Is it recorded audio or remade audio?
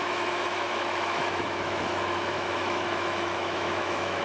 remade